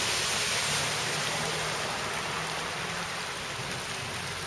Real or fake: real